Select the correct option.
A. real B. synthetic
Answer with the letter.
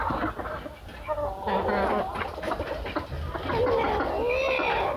A